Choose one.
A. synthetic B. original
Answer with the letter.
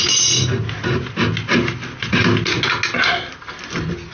B